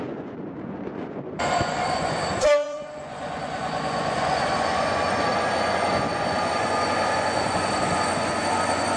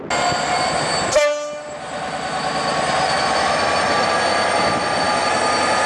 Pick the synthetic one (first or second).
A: first